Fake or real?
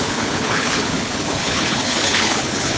fake